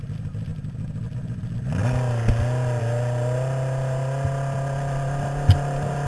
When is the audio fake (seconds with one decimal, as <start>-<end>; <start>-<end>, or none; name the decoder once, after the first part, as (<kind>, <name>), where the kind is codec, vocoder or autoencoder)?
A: none